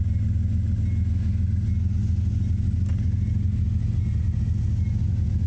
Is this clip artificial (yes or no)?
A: no